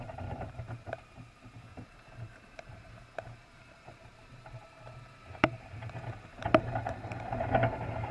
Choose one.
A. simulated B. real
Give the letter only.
A